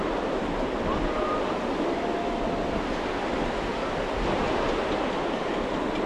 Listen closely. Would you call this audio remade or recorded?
recorded